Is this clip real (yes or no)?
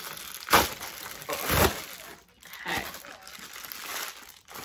yes